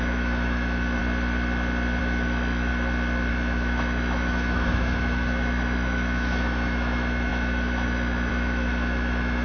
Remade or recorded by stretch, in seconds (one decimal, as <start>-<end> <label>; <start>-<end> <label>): 0.0-1.0 remade; 1.0-2.0 recorded; 2.0-2.7 remade; 2.7-3.3 recorded; 3.3-9.4 remade